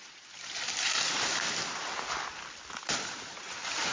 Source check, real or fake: real